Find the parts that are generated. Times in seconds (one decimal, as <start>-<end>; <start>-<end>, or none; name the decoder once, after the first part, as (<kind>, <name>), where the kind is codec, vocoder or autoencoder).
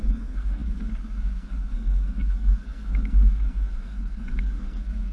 0.0-5.1 (codec, SNAC)